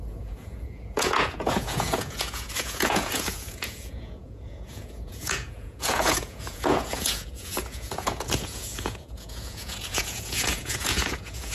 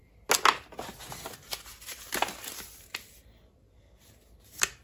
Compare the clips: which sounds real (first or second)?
second